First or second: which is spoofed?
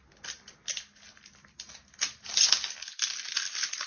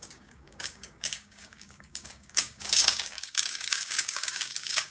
second